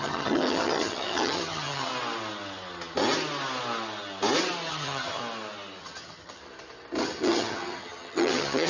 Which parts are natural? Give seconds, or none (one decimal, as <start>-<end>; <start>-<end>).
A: 1.9-4.7; 5.2-5.8; 6.4-7.0

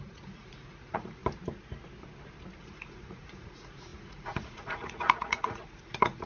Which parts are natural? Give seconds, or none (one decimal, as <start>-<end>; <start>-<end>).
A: 1.2-2.6